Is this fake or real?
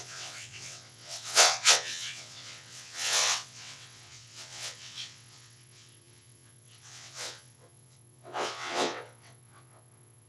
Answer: fake